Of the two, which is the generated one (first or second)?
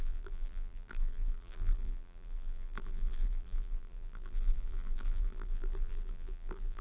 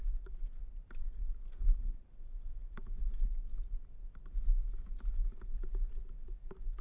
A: first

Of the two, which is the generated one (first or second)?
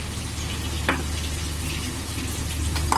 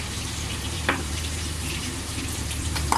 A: second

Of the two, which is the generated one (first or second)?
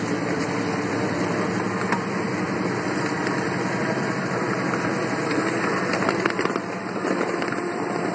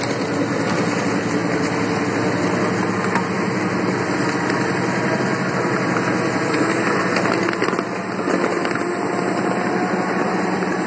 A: first